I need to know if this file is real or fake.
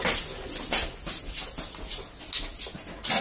real